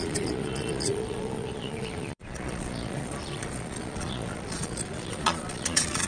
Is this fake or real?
fake